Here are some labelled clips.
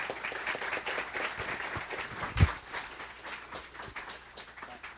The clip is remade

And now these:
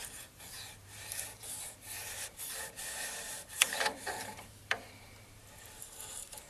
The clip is remade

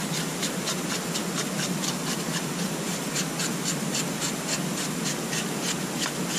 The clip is recorded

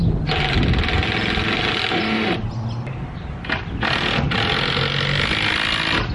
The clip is recorded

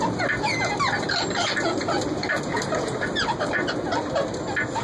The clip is recorded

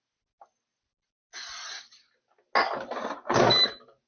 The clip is recorded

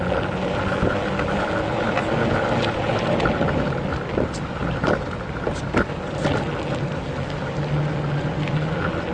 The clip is recorded